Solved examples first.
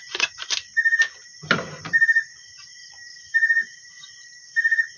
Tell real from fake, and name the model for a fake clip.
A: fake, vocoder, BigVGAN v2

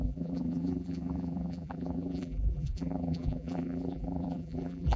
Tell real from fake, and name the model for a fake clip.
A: fake, vocoder, BigVGAN v2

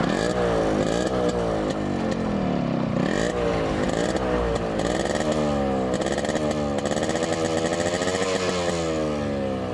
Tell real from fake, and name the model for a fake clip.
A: real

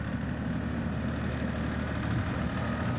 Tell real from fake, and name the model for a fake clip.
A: real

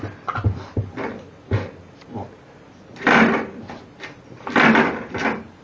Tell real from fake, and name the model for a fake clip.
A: real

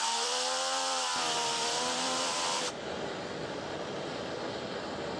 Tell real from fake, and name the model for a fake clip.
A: fake, vocoder, BigVGAN v2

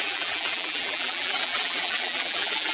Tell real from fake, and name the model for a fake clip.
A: fake, vocoder, BigVGAN v2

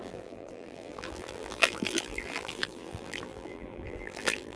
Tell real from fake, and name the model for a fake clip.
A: fake, vocoder, BigVGAN v2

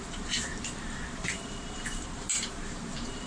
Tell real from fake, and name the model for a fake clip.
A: fake, vocoder, BigVGAN v2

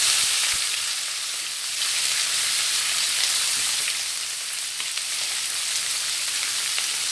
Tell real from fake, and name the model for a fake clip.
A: fake, vocoder, BigVGAN v2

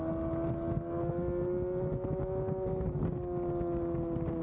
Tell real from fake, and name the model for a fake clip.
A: real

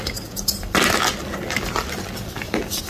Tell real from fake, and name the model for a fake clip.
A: real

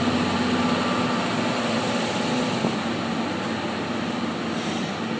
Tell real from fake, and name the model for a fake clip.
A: real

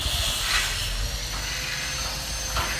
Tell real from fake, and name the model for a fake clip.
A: real